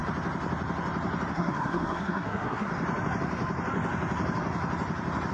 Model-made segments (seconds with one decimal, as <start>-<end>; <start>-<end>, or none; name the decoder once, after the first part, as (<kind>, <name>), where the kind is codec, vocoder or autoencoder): 1.3-2.7 (codec, SNAC)